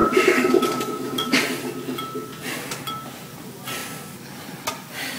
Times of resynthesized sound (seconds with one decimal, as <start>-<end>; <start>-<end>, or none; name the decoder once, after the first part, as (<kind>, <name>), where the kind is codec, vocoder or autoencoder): 0.0-1.4 (codec, DAC)